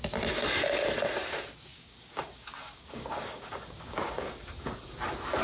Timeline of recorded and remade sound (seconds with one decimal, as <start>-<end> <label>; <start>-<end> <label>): 0.0-1.7 recorded; 1.7-4.8 remade; 4.8-5.4 recorded